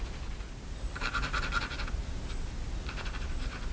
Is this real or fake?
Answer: real